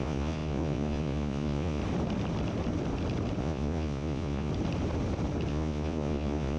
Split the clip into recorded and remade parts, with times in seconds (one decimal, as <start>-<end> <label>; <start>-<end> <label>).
0.0-1.8 remade; 1.8-3.4 recorded; 3.4-4.5 remade; 4.5-5.5 recorded; 5.5-6.6 remade